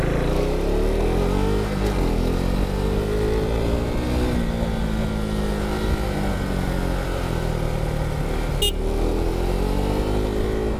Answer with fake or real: real